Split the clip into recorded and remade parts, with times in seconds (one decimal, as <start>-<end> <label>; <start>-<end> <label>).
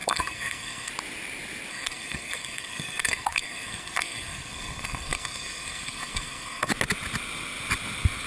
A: 0.0-0.9 remade; 0.9-1.7 recorded; 1.7-6.7 remade; 6.7-8.3 recorded